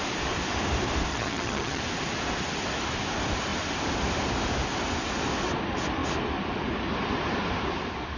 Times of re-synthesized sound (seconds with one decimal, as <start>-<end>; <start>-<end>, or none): 1.1-1.8